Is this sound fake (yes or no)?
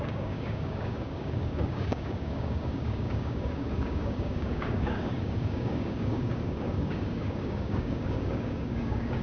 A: yes